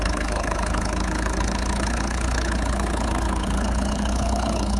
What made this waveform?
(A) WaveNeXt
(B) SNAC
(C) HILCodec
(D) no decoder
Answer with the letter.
C